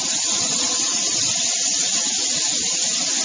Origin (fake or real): real